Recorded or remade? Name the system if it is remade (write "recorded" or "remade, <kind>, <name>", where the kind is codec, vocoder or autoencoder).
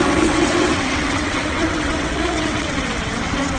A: remade, vocoder, WaveNeXt